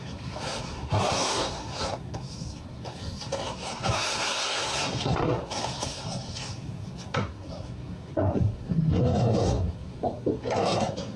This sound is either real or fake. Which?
fake